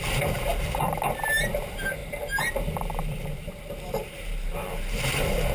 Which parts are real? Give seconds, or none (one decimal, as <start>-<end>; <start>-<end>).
0.5-1.2